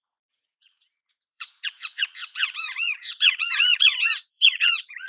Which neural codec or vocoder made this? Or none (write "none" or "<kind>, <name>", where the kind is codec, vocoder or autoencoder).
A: vocoder, Vocos